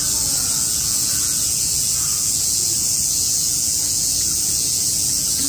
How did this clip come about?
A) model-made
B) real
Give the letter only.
A